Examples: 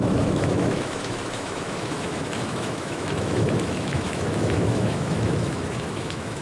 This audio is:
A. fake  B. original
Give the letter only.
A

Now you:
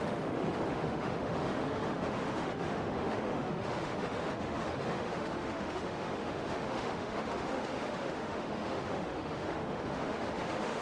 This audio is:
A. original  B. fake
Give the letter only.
B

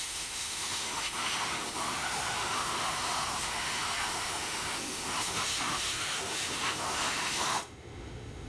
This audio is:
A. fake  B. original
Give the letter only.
A